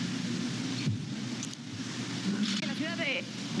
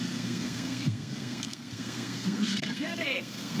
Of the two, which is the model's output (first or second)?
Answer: second